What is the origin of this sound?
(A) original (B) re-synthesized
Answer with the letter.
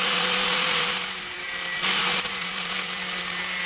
B